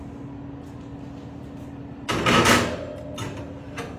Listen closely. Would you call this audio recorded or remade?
recorded